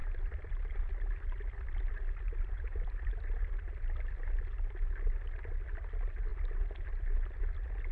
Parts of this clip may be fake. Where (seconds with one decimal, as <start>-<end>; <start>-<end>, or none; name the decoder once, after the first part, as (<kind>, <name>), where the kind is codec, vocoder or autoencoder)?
0.0-3.1 (vocoder, BigVGAN v2)